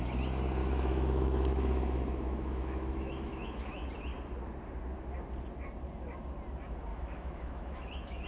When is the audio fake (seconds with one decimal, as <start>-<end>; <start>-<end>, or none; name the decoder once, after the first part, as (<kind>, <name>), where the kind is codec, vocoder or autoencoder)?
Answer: 0.6-3.9 (autoencoder, DAC-VAE); 6.9-8.3